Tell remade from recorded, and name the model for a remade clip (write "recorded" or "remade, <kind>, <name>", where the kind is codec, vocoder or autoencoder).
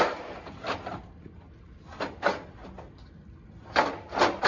recorded